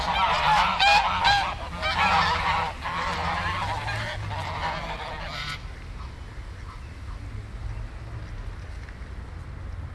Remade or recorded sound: recorded